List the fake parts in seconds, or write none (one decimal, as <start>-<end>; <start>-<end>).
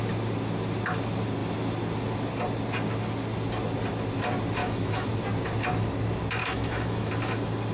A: 4.6-5.1; 6.4-7.1